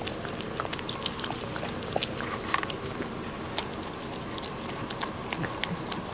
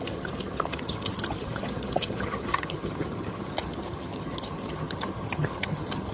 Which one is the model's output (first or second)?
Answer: second